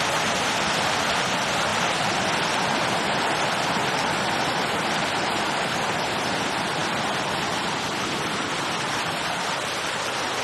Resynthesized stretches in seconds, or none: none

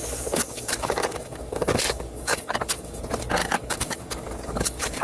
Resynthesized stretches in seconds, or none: 0.0-3.0; 3.4-5.0

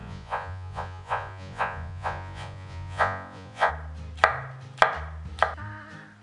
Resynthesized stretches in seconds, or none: 0.0-3.7

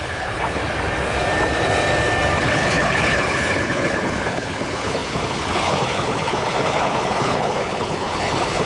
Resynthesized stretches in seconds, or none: 0.0-0.6; 2.4-8.7

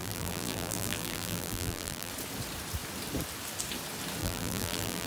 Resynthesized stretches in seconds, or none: 0.0-2.1; 4.2-5.1

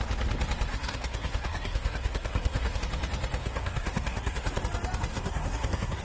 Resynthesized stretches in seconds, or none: 0.7-2.8; 3.4-4.6; 5.1-6.0

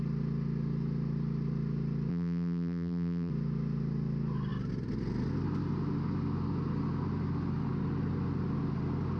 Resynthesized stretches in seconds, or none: 2.1-3.3

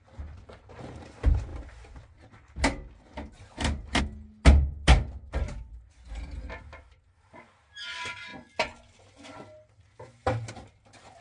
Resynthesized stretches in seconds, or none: none